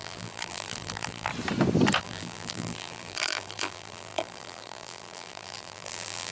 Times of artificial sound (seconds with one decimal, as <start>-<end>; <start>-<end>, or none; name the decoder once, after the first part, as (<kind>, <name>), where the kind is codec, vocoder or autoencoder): 0.0-1.3 (vocoder, BigVGAN v2); 2.0-6.3